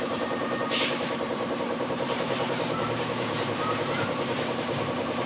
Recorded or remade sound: remade